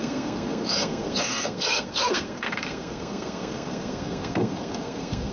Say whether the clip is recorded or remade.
remade